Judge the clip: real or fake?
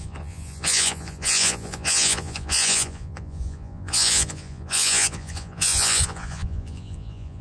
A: fake